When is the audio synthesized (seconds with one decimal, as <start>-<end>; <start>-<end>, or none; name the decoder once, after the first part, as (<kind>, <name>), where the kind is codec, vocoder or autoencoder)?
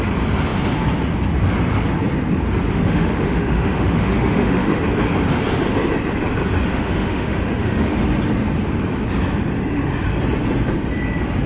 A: 2.7-4.8 (autoencoder, DAC-VAE); 6.7-7.9